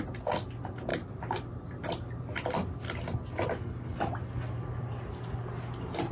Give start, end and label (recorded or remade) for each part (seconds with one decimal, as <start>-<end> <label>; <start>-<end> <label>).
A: 0.0-0.9 recorded; 0.9-1.8 remade; 1.8-6.1 recorded